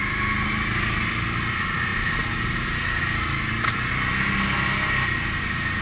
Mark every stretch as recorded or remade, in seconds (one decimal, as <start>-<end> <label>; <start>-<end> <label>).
0.0-5.8 recorded